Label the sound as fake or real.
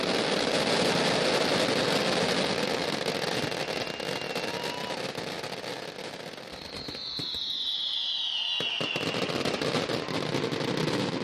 real